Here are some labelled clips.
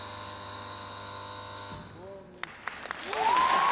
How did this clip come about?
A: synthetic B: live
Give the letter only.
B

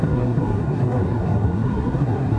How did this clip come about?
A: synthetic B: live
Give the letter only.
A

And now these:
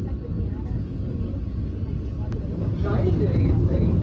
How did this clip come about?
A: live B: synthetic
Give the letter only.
A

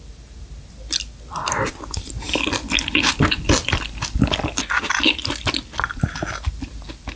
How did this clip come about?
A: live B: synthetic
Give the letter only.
A